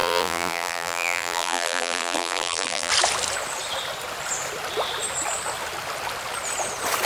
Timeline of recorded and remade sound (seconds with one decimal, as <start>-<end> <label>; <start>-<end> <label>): 0.0-2.9 remade; 2.9-7.1 recorded